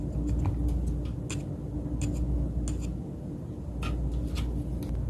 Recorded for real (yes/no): yes